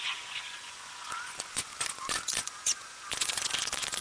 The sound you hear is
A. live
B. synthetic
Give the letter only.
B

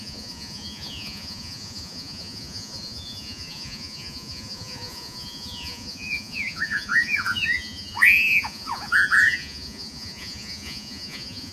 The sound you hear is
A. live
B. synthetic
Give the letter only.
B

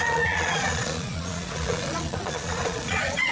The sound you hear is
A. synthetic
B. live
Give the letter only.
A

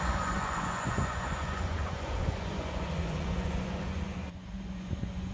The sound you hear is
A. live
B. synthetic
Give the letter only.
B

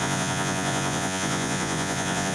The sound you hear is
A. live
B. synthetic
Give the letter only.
B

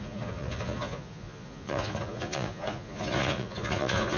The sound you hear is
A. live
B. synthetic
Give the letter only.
B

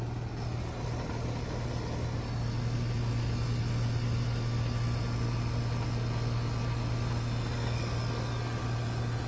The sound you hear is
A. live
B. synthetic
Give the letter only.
A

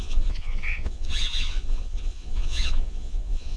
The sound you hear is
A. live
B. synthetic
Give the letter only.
B